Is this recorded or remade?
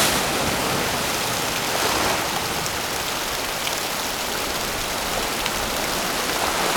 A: recorded